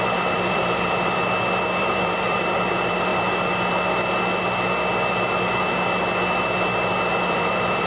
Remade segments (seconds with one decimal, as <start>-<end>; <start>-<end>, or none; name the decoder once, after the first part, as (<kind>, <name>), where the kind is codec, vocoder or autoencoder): 0.0-1.2 (vocoder, BigVGAN v2); 1.8-3.1; 7.3-7.9